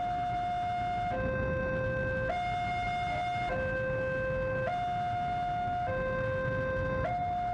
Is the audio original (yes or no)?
yes